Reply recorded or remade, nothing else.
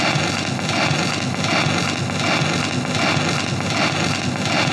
recorded